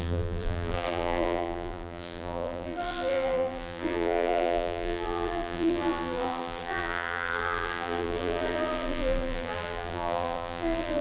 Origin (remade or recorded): remade